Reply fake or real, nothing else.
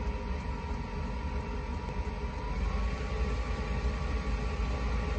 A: real